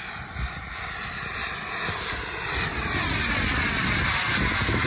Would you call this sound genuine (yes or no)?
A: yes